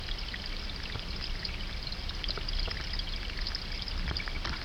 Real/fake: real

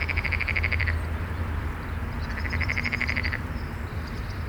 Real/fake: fake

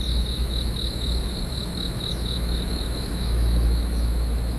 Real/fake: fake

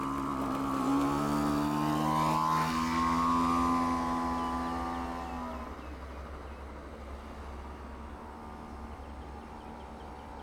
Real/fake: real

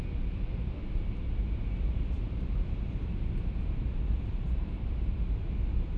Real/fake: fake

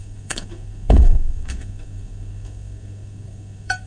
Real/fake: fake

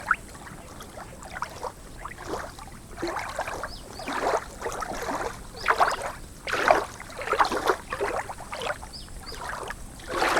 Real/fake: real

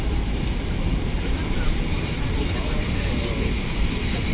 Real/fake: fake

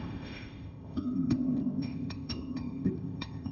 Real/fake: fake